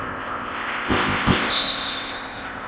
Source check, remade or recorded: remade